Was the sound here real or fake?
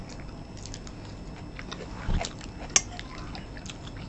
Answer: real